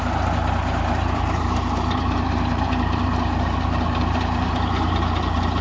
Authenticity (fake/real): fake